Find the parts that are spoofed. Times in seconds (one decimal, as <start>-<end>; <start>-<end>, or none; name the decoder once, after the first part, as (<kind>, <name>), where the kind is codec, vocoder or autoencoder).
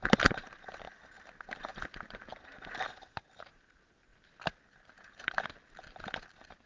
none